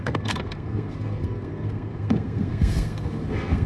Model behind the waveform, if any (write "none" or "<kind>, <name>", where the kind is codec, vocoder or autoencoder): codec, SNAC